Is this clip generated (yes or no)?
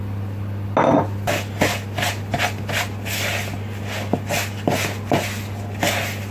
no